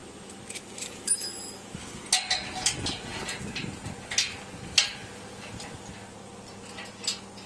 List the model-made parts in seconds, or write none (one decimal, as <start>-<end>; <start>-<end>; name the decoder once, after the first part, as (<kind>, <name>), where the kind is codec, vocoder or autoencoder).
0.0-2.0 (autoencoder, DAC-VAE)